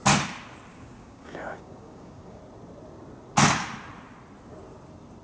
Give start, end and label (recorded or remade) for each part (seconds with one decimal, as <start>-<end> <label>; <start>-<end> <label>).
0.0-0.7 recorded; 0.7-2.4 remade; 2.4-5.2 recorded